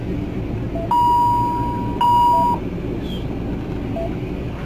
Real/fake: real